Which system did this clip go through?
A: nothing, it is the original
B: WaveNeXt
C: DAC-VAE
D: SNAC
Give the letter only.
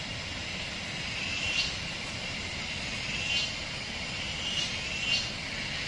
A